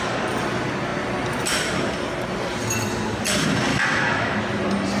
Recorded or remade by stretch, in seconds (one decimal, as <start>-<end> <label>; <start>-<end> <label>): 0.0-3.7 recorded; 3.7-4.4 remade; 4.4-5.0 recorded

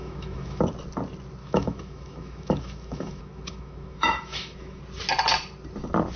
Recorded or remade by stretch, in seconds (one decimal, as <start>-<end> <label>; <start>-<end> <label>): 0.0-0.6 remade; 0.6-1.4 recorded; 1.4-4.8 remade; 4.8-6.2 recorded

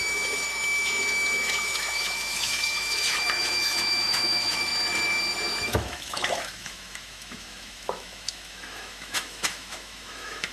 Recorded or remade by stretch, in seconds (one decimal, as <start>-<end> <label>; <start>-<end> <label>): 0.0-4.7 remade; 4.7-5.6 recorded; 5.6-10.5 remade

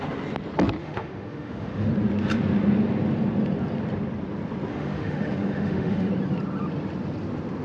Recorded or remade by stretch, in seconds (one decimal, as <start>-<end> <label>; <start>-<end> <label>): 0.0-0.8 recorded; 0.8-1.9 remade; 1.9-4.7 recorded; 4.7-6.1 remade; 6.1-7.6 recorded